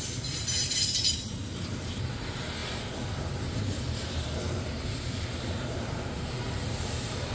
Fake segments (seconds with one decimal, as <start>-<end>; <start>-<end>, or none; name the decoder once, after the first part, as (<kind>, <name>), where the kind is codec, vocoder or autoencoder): 0.0-7.3 (vocoder, BigVGAN v2)

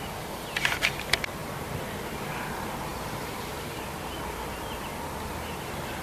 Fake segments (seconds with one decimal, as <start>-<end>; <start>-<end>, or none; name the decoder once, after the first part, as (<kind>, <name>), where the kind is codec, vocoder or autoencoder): 2.9-4.2 (vocoder, BigVGAN v2)

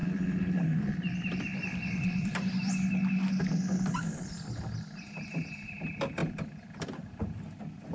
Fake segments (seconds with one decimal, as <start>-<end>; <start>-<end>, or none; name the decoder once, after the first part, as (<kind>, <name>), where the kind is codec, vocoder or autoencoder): 0.0-2.7 (vocoder, BigVGAN v2)

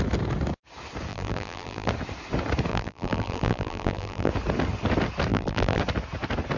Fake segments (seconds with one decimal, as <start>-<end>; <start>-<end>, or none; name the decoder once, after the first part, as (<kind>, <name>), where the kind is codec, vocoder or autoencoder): 1.1-1.9 (vocoder, BigVGAN v2); 2.7-4.3; 5.3-5.8

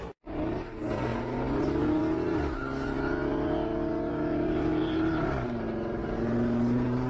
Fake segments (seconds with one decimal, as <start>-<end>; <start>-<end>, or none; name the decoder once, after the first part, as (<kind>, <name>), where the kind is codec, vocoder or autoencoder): 0.0-1.1 (vocoder, BigVGAN v2); 1.6-2.0; 4.1-7.1

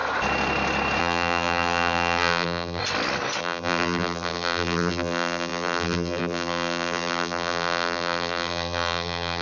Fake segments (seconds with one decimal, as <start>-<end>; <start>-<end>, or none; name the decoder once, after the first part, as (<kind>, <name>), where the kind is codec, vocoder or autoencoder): 1.0-2.8 (vocoder, BigVGAN v2); 3.4-9.4